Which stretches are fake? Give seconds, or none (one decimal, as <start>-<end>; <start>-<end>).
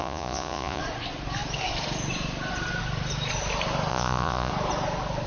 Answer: 0.0-0.8; 3.9-4.5